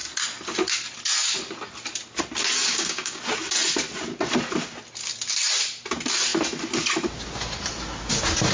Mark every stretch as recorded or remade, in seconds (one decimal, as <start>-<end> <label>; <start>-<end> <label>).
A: 0.0-2.7 recorded; 2.7-3.2 remade; 3.2-8.5 recorded